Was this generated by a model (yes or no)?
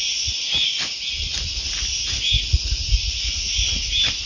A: no